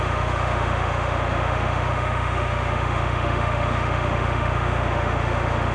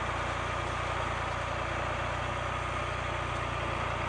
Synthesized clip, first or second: first